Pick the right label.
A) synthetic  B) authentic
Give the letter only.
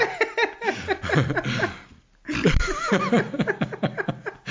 B